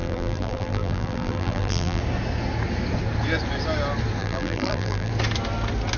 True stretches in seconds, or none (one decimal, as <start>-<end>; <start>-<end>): 2.0-4.2; 5.1-6.0